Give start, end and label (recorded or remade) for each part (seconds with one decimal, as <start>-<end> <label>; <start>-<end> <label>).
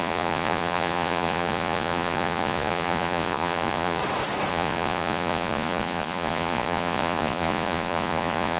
0.0-4.0 remade; 4.0-4.5 recorded; 4.5-8.6 remade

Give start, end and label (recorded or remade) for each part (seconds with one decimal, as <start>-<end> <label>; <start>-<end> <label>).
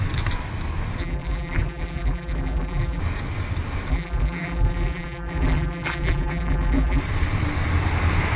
0.0-1.0 recorded; 1.0-3.0 remade; 3.0-3.9 recorded; 3.9-7.0 remade; 7.0-8.4 recorded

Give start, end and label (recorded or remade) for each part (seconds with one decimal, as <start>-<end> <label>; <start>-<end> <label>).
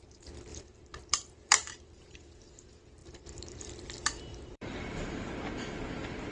0.0-0.5 recorded; 0.5-2.5 remade; 2.5-3.0 recorded; 3.0-3.7 remade; 3.7-4.3 recorded; 4.3-5.3 remade; 5.3-6.3 recorded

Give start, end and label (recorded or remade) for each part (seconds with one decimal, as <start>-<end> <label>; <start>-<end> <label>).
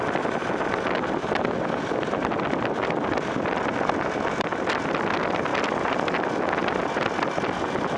0.0-1.2 recorded; 1.2-4.9 remade; 4.9-8.0 recorded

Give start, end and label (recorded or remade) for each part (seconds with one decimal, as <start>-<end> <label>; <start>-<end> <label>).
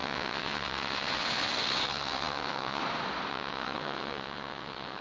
0.0-2.8 remade; 2.8-3.3 recorded; 3.3-5.0 remade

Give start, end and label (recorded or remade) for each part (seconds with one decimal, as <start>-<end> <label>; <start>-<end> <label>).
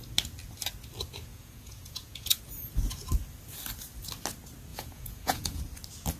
0.0-1.3 recorded; 1.3-2.4 remade; 2.4-4.7 recorded; 4.7-5.6 remade; 5.6-6.2 recorded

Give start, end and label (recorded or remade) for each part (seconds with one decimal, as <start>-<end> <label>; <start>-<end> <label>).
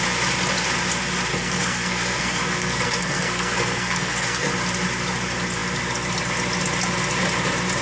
0.0-1.3 recorded; 1.3-4.5 remade; 4.5-7.8 recorded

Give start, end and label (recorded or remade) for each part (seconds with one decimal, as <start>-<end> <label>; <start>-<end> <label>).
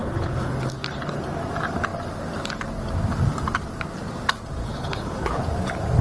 0.0-0.5 remade; 0.5-4.6 recorded; 4.6-5.4 remade; 5.4-6.0 recorded